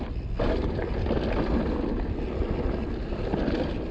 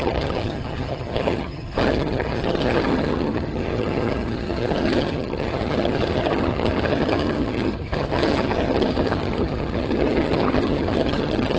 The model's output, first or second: second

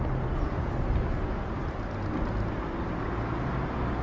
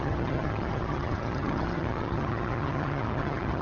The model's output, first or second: second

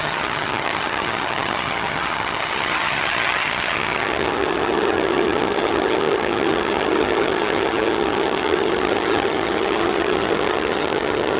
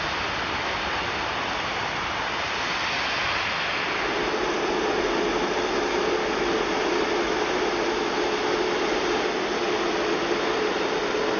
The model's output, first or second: first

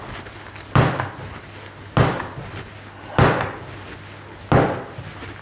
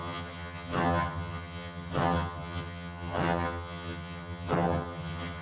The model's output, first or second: second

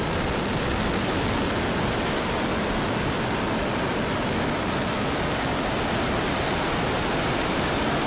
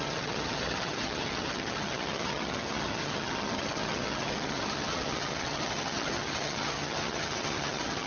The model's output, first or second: second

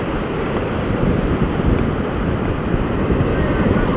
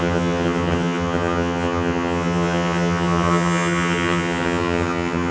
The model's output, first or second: second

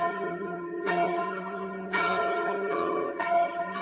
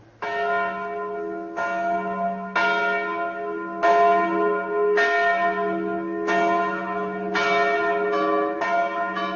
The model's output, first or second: first